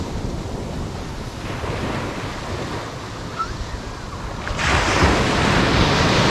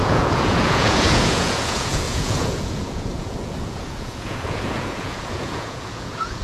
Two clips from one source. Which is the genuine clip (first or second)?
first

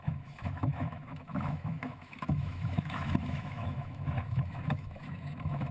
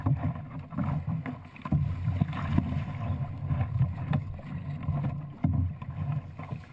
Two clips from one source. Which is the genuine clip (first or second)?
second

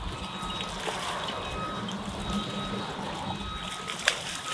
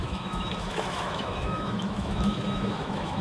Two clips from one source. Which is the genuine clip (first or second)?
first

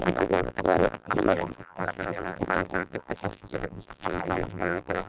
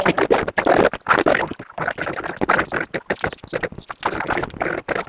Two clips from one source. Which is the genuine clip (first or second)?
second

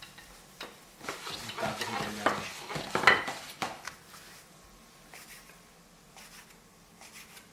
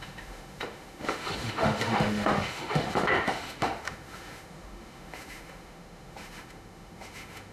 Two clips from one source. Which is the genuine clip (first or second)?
first